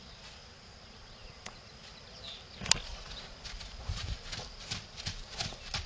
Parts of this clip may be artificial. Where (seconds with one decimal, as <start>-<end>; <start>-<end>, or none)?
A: none

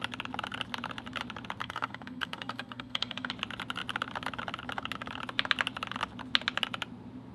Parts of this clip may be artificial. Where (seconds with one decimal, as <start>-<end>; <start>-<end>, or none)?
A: 1.6-3.3

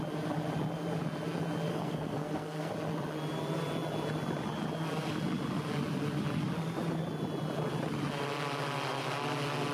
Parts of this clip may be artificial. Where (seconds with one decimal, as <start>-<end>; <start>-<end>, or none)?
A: 1.7-2.7

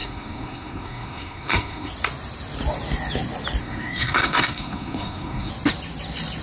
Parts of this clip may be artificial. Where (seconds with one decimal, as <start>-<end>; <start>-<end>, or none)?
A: 0.0-1.9; 3.6-5.5

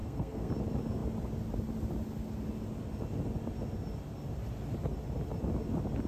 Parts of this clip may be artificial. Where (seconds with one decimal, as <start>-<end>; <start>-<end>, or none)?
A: 0.0-0.5

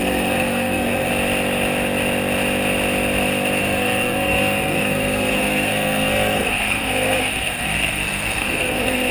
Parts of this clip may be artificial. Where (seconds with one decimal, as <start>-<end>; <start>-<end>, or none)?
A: 0.0-1.1; 3.6-9.1

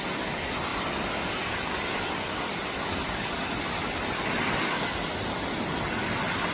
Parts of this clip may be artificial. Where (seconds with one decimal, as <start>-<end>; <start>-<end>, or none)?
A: none

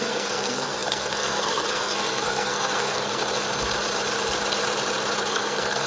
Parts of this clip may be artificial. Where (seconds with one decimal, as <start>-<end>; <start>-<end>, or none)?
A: 0.0-3.2; 5.3-5.9